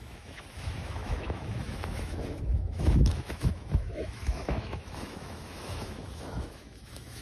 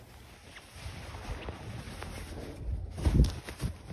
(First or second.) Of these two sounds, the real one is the second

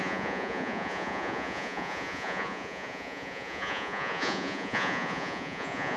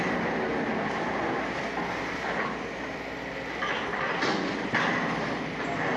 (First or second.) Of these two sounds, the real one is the second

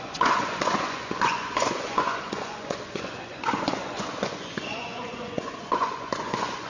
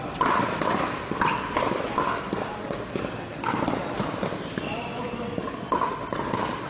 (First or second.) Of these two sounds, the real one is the second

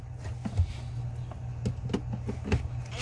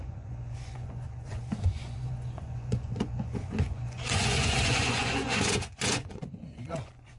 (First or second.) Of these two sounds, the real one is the first